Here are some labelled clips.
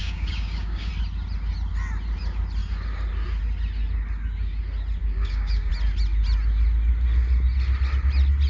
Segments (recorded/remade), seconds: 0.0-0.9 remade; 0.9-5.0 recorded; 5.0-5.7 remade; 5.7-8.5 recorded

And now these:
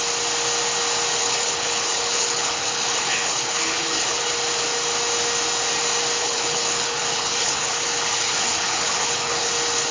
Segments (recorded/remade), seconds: 0.0-1.1 recorded; 1.1-4.3 remade; 4.3-6.2 recorded; 6.2-9.5 remade; 9.5-9.9 recorded

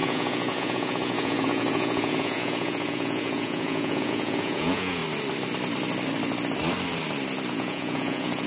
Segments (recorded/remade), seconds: 0.0-5.0 remade; 5.0-7.5 recorded; 7.5-8.5 remade

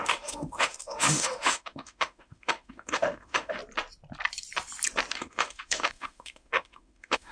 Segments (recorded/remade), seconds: 0.0-3.6 remade; 3.6-5.1 recorded; 5.1-7.3 remade

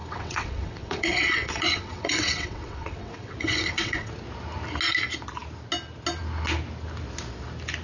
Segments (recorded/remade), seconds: 0.0-4.1 remade; 4.1-7.8 recorded

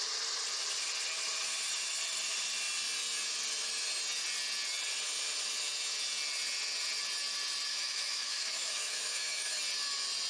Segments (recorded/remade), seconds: 0.0-7.7 recorded; 7.7-9.6 remade; 9.6-10.3 recorded

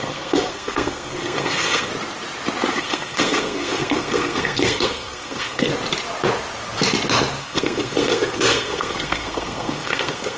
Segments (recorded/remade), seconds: 0.0-1.9 remade; 1.9-2.7 recorded; 2.7-5.7 remade; 5.7-7.4 recorded; 7.4-10.4 remade